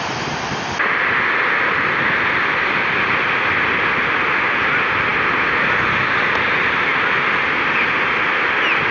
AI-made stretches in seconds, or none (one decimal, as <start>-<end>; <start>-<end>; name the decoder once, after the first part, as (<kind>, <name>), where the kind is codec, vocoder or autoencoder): none